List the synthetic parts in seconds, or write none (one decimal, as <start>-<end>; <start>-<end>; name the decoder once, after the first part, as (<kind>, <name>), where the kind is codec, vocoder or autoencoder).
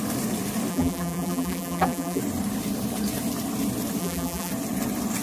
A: 0.7-2.2 (vocoder, BigVGAN v2); 4.0-4.5